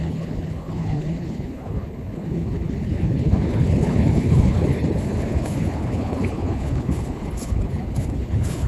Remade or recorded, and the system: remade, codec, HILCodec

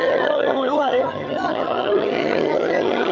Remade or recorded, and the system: remade, vocoder, HiFi-GAN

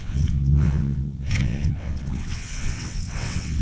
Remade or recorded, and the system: remade, vocoder, WaveNeXt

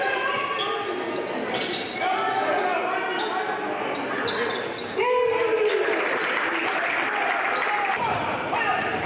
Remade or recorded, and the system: recorded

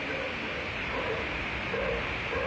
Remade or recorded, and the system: recorded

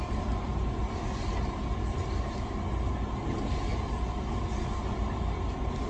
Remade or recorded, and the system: recorded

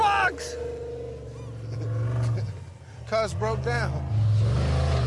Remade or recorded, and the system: recorded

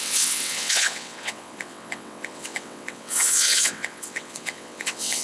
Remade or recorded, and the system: remade, vocoder, WaveNeXt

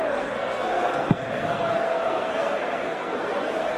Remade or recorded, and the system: remade, codec, SNAC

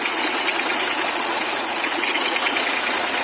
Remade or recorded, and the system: remade, vocoder, Vocos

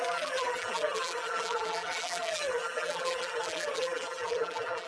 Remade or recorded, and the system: remade, vocoder, BigVGAN v2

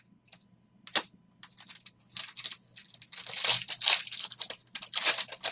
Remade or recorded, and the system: recorded